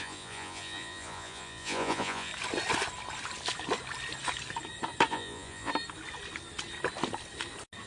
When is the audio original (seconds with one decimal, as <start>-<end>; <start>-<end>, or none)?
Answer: 2.3-5.1; 5.7-7.9